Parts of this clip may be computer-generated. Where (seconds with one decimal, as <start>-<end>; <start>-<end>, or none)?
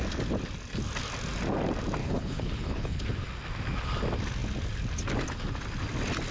2.0-3.0